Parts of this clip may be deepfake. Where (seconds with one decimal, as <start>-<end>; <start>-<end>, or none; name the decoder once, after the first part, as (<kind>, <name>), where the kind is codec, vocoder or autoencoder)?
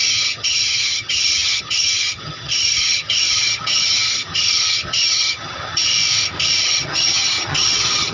0.0-5.9 (vocoder, HiFi-GAN); 6.6-8.1